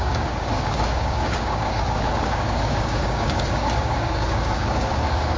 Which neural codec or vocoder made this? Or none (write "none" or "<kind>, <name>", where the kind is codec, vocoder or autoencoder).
codec, DAC